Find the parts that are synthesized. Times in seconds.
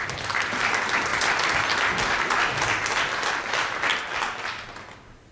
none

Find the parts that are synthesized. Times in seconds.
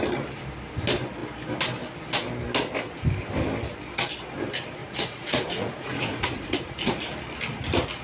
4.8-6.9 (vocoder, Vocos)